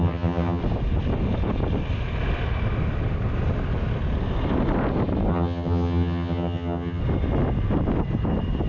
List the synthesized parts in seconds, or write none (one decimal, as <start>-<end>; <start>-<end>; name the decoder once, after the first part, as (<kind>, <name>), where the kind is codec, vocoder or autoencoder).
0.0-0.6 (vocoder, HiFi-GAN); 5.3-7.0